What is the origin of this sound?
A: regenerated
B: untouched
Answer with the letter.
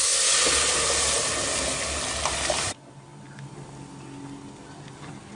B